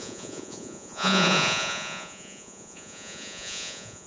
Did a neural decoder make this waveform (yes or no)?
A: yes